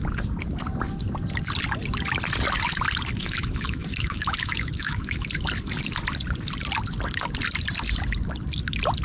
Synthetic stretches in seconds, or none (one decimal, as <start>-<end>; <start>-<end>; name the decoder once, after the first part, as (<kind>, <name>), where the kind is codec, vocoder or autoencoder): 3.2-5.3 (autoencoder, DAC-VAE)

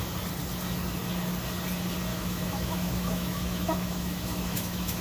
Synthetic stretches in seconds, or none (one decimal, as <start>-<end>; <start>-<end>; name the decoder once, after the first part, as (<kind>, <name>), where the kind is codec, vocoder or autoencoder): 2.1-5.0 (autoencoder, DAC-VAE)

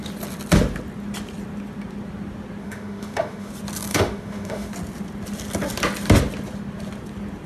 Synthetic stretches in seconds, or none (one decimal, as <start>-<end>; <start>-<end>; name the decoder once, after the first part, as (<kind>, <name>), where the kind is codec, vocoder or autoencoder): 2.6-3.5 (autoencoder, DAC-VAE); 3.9-4.7

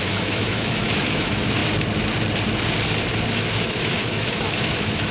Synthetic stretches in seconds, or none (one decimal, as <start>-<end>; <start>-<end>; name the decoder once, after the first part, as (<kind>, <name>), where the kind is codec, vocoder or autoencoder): 0.0-1.6 (autoencoder, DAC-VAE); 3.5-5.1

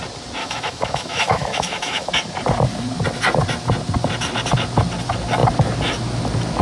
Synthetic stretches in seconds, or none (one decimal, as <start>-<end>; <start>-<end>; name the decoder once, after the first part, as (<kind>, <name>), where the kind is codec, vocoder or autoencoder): 0.4-2.1 (autoencoder, DAC-VAE)